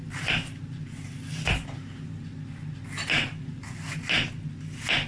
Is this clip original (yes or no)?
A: yes